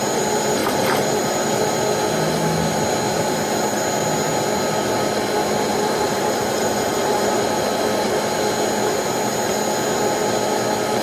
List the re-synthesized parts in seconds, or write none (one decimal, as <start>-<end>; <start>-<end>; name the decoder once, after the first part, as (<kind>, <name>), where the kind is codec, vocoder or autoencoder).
0.6-1.7 (vocoder, BigVGAN v2); 5.7-8.1